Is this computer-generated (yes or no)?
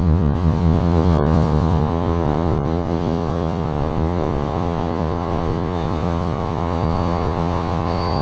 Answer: yes